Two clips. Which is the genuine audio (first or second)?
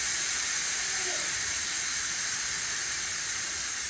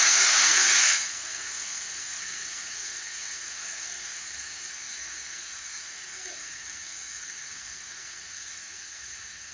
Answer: first